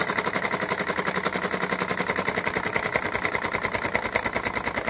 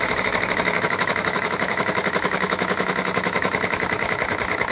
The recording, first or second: first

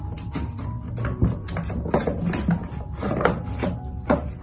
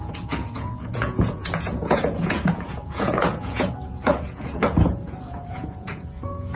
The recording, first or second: first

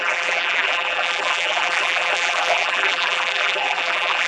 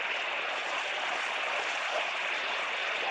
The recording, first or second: second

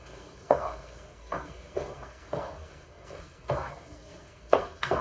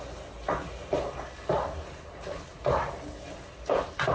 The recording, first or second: second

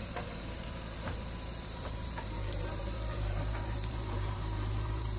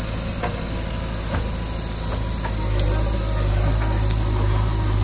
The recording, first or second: second